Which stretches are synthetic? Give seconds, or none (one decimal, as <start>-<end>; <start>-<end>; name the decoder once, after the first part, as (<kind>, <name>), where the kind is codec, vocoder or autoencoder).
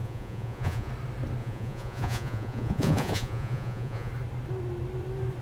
0.0-0.9 (vocoder, Vocos); 1.4-4.1